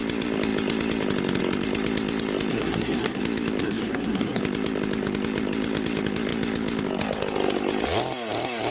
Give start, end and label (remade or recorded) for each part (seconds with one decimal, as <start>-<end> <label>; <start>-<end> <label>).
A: 0.0-2.5 recorded; 2.5-3.2 remade; 3.2-3.6 recorded; 3.6-4.4 remade; 4.4-8.7 recorded